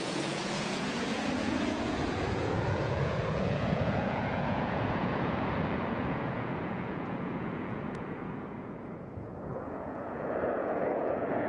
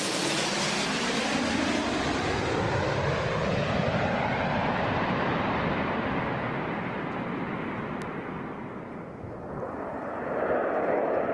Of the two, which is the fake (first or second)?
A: first